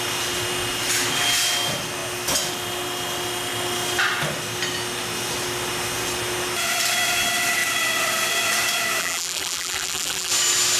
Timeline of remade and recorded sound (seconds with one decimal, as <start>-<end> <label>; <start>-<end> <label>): 0.0-9.0 recorded; 9.0-10.3 remade; 10.3-10.8 recorded